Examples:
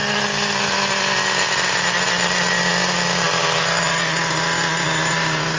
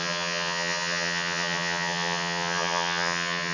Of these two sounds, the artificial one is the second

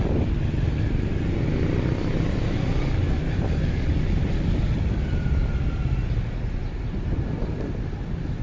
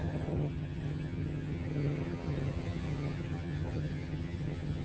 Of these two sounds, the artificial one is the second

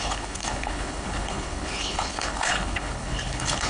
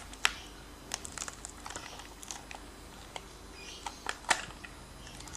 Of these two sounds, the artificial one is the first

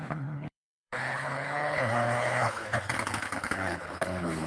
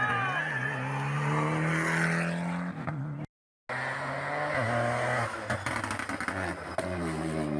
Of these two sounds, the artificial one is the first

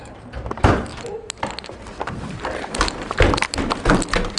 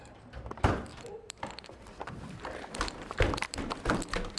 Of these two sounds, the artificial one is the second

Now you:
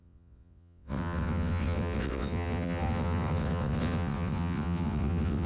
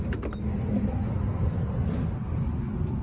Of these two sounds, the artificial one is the first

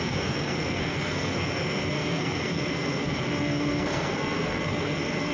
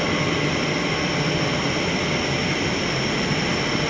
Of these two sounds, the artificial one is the first